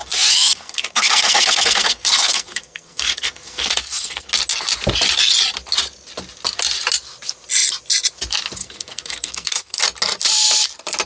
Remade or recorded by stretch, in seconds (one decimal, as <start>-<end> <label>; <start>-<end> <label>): 0.0-4.3 remade; 4.3-8.6 recorded; 8.6-9.8 remade; 9.8-11.1 recorded

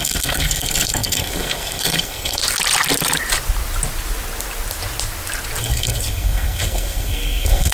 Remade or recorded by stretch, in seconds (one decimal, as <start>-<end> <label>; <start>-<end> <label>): 0.0-2.4 remade; 2.4-5.6 recorded; 5.6-7.7 remade

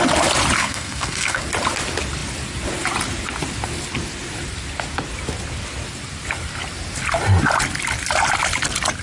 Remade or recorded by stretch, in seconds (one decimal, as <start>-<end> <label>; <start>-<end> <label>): 0.0-0.6 recorded; 0.6-1.4 remade; 1.4-9.0 recorded

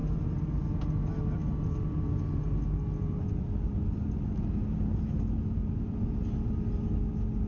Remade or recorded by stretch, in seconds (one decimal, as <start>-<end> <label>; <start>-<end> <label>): 0.0-7.5 recorded

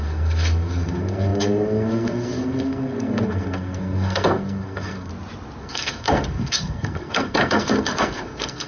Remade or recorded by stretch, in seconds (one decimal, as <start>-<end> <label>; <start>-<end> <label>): 0.0-5.1 remade; 5.1-5.6 recorded; 5.6-8.7 remade

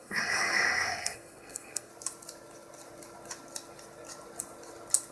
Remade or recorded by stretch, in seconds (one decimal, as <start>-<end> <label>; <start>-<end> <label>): 0.0-1.9 remade; 1.9-5.1 recorded

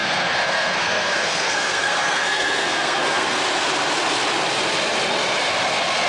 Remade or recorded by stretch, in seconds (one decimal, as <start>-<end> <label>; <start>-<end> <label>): 0.0-3.4 remade; 3.4-6.1 recorded

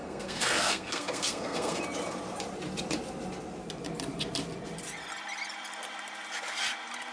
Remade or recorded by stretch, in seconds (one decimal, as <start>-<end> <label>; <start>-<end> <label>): 0.0-1.8 remade; 1.8-7.1 recorded